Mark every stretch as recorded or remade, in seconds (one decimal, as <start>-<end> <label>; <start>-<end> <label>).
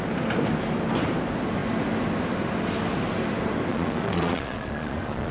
0.0-3.7 recorded; 3.7-5.3 remade